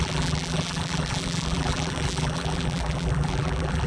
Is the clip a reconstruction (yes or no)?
yes